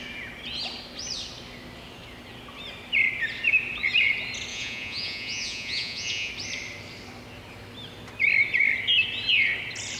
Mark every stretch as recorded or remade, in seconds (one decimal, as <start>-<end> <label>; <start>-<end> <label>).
0.0-4.5 recorded; 4.5-6.3 remade; 6.3-10.0 recorded